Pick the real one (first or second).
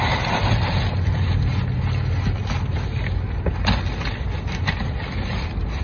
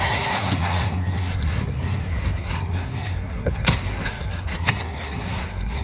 first